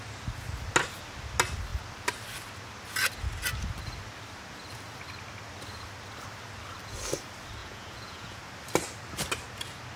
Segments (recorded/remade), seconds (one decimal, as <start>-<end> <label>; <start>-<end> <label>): 0.0-7.6 recorded; 7.6-8.4 remade; 8.4-10.0 recorded